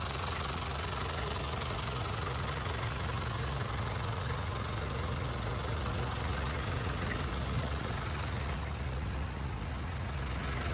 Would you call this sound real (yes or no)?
no